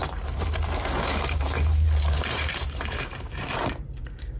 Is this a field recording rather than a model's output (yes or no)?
no